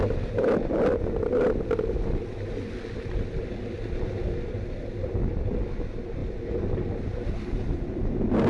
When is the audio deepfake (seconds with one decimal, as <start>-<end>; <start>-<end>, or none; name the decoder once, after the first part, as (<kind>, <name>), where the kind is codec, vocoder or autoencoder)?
none